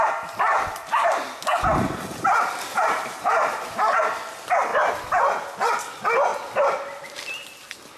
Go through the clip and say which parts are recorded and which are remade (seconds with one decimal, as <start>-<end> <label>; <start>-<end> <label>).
0.0-2.7 recorded; 2.7-4.0 remade; 4.0-8.0 recorded